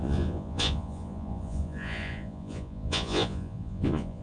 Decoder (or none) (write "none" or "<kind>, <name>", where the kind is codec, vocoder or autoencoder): vocoder, Vocos